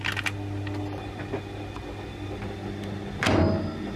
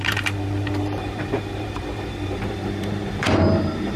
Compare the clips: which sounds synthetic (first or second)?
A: second